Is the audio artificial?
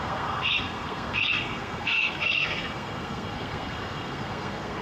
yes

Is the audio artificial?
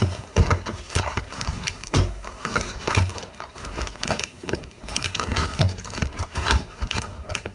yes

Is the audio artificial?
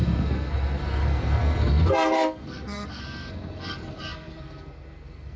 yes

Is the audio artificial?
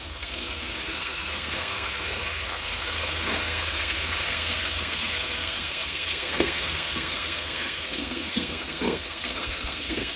yes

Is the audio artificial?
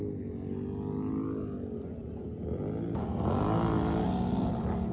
no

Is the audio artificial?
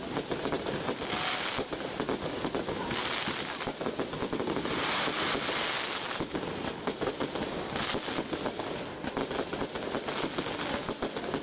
no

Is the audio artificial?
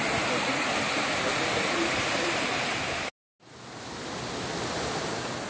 no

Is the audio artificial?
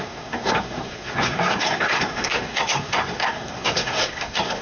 yes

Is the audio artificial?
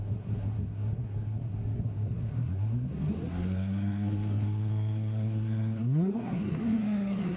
yes